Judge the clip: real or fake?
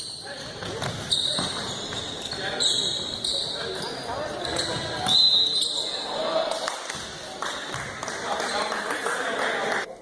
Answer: real